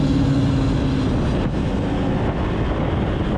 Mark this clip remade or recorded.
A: recorded